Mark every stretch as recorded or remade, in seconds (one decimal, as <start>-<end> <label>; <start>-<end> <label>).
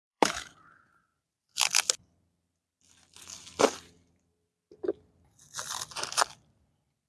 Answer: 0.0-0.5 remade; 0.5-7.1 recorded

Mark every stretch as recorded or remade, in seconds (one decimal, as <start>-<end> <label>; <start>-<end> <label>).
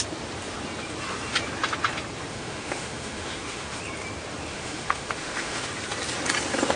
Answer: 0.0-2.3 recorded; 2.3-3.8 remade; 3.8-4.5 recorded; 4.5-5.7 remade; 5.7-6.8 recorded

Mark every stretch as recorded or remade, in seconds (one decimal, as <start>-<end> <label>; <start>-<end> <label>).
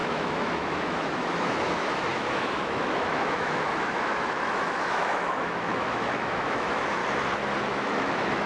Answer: 0.0-7.0 remade; 7.0-7.6 recorded; 7.6-8.5 remade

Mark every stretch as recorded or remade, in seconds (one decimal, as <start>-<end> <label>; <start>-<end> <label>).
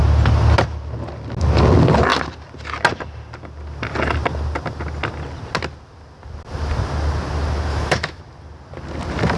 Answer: 0.0-7.7 recorded; 7.7-8.2 remade; 8.2-9.4 recorded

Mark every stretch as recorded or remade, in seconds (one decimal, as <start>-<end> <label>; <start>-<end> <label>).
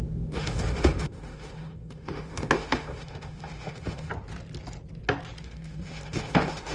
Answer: 0.0-4.1 remade; 4.1-5.4 recorded; 5.4-6.7 remade